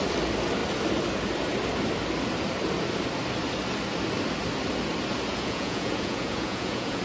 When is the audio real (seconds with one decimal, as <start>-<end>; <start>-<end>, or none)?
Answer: 0.0-5.3